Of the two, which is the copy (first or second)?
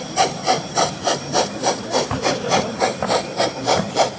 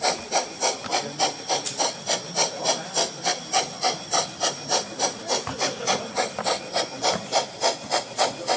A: first